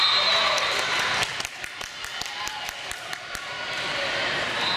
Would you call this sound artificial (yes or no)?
no